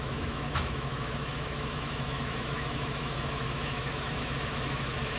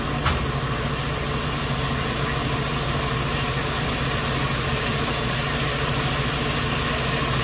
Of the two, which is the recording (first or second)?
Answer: second